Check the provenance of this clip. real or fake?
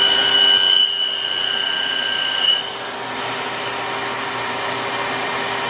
real